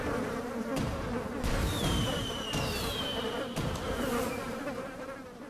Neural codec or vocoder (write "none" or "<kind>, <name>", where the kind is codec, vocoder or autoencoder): vocoder, BigVGAN v2